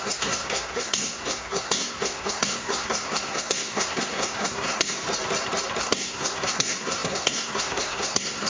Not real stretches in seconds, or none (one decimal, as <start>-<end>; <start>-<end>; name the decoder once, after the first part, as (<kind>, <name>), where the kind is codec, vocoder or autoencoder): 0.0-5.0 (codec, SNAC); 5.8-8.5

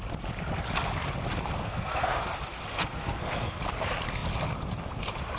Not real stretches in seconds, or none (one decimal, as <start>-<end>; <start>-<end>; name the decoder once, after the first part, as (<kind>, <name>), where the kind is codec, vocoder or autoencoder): 1.6-2.2 (codec, SNAC); 2.7-3.6

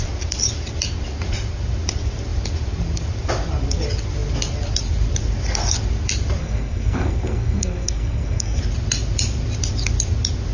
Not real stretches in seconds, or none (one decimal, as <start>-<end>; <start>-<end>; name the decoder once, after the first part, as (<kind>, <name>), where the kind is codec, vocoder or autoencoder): 6.4-8.6 (codec, SNAC)

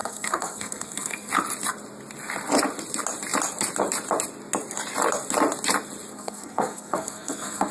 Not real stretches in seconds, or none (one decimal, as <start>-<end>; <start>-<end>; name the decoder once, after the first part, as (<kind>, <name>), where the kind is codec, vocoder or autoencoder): 0.0-1.3 (codec, SNAC); 6.1-7.7

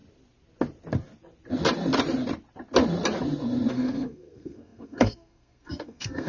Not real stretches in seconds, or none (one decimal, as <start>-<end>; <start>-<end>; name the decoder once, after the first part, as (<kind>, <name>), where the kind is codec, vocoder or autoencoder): 3.7-6.3 (codec, SNAC)

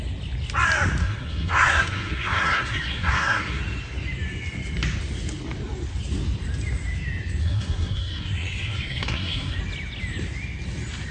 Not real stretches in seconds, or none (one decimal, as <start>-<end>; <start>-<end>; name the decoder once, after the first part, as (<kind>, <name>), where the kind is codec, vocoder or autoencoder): 1.0-3.6 (codec, SNAC); 7.4-9.6